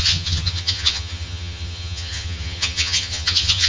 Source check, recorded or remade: remade